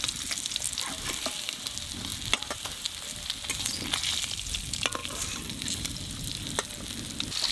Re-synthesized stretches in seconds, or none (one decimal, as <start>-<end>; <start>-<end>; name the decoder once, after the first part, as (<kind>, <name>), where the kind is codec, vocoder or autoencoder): none

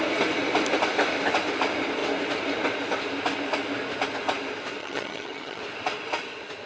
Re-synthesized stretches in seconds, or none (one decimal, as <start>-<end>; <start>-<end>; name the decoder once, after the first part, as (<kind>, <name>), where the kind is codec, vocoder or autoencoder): 4.8-5.6 (vocoder, HiFi-GAN)

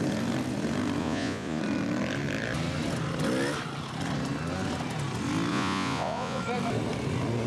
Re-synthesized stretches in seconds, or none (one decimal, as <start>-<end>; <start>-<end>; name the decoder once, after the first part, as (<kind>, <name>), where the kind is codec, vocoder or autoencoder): 1.0-1.6 (vocoder, Vocos); 5.5-6.4

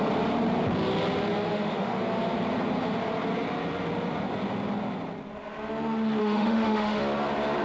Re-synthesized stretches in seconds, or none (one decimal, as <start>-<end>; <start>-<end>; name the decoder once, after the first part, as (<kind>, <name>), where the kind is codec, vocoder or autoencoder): 1.5-2.0 (autoencoder, DAC-VAE); 6.2-7.0